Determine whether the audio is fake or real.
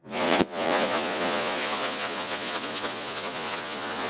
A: fake